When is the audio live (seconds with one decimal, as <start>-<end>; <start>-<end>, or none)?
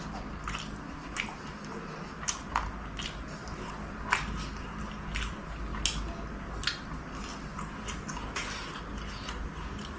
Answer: 0.0-10.0